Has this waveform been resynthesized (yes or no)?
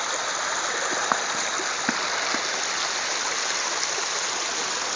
no